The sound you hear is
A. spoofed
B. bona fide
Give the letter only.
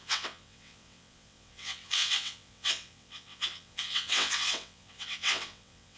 A